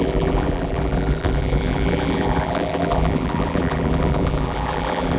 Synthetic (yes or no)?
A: yes